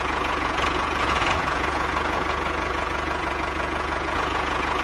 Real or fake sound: fake